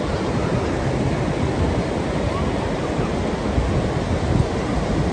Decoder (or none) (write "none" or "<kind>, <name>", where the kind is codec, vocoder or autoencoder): none